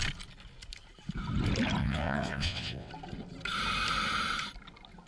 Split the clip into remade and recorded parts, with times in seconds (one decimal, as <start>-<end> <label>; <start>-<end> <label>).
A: 0.0-1.8 recorded; 1.8-2.9 remade; 2.9-5.1 recorded